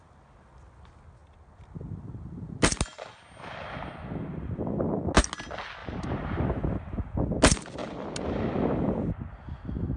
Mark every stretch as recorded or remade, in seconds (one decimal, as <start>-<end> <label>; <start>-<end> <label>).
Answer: 0.0-5.8 recorded; 5.8-6.9 remade; 6.9-10.0 recorded